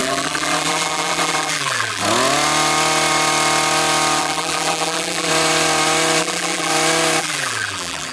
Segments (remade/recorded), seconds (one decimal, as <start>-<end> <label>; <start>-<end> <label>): 0.0-2.0 remade; 2.0-4.2 recorded; 4.2-5.3 remade; 5.3-6.2 recorded; 6.2-6.7 remade; 6.7-7.2 recorded; 7.2-8.1 remade